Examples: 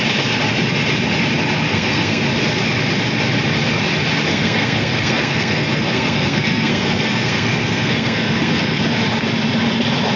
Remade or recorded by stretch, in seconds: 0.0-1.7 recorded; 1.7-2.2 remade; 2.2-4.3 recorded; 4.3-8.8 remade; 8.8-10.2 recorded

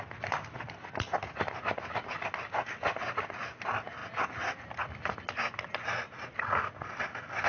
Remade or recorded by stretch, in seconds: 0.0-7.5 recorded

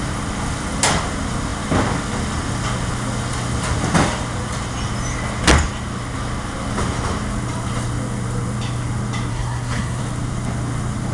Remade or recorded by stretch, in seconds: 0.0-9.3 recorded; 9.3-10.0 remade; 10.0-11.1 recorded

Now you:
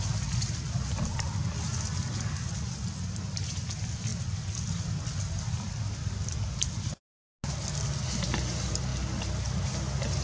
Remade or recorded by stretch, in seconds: 0.0-10.2 recorded